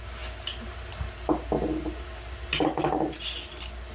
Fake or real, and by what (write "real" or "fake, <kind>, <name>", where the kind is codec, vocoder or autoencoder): real